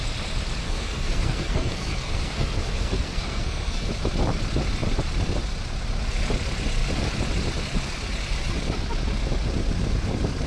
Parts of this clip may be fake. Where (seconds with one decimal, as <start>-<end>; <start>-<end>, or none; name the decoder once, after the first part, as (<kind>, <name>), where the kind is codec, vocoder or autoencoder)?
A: 0.6-3.9 (codec, SNAC)